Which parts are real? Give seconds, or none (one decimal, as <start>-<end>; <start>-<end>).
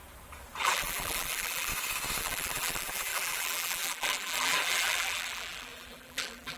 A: 0.0-0.6; 1.7-2.2